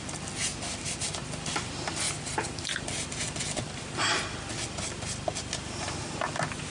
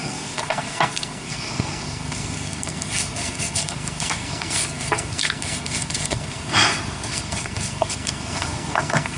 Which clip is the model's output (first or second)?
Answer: second